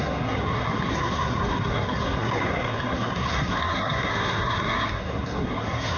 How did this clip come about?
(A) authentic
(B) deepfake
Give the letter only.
B